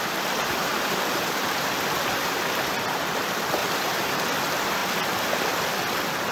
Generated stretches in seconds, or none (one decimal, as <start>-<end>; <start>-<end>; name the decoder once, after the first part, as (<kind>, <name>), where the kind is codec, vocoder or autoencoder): 0.7-1.7 (vocoder, BigVGAN v2); 3.6-4.1